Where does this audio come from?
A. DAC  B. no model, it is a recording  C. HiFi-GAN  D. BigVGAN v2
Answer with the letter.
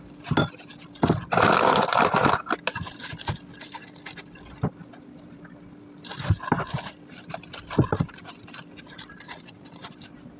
B